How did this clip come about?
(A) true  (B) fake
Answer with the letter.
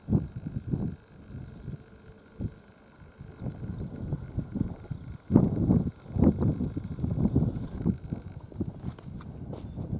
A